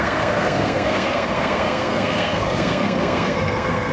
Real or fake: fake